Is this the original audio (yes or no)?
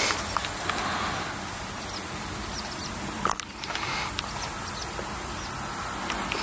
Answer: yes